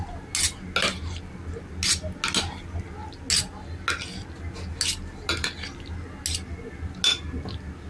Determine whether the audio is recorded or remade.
recorded